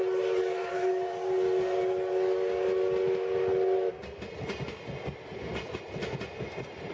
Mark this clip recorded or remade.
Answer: recorded